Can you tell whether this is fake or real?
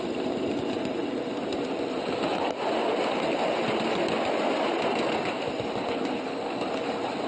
real